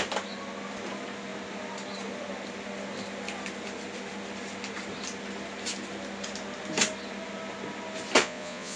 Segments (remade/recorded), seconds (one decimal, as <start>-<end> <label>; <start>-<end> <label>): 0.0-8.2 recorded; 8.2-8.8 remade